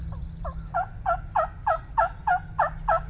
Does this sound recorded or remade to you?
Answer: recorded